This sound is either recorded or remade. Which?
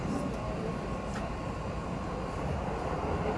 recorded